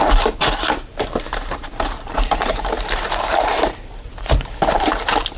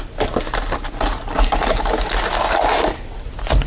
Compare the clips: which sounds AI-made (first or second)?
first